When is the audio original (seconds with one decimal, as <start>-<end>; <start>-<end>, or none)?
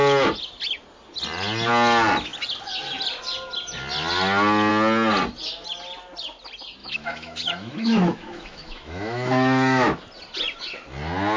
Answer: 0.0-6.8; 10.0-11.4